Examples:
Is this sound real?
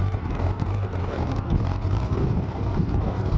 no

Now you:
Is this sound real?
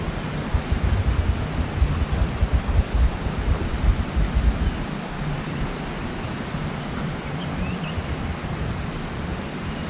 yes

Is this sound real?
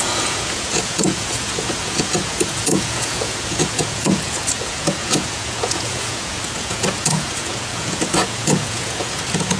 no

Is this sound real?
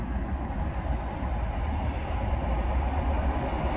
yes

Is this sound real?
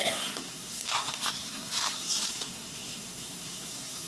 no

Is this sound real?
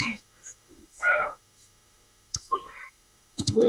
no